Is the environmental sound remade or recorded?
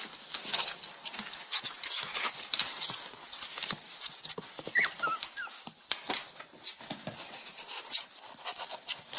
recorded